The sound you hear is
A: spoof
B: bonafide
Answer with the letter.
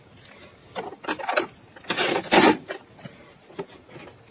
B